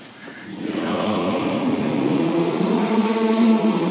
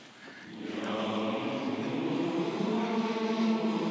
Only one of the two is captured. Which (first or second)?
second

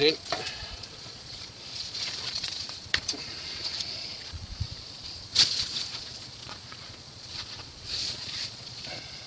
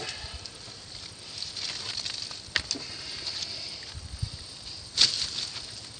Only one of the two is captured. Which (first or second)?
second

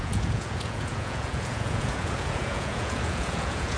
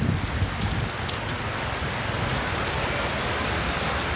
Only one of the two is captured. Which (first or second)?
second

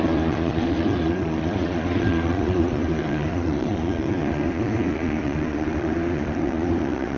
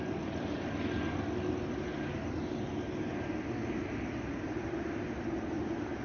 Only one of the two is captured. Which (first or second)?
second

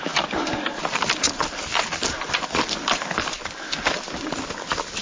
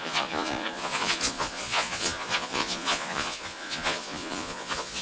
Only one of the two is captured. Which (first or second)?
first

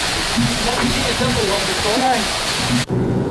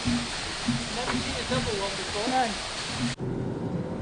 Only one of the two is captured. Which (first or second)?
second